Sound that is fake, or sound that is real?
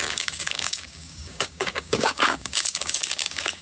fake